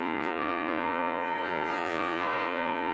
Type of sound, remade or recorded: remade